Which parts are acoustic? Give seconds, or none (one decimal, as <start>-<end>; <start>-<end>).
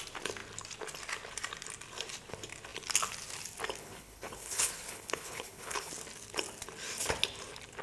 0.0-3.8; 5.9-7.8